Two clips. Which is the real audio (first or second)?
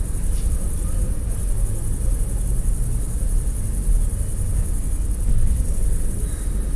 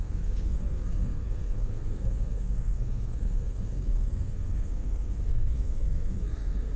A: first